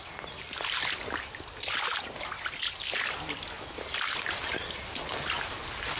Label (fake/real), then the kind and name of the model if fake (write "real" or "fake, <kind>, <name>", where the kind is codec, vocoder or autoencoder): real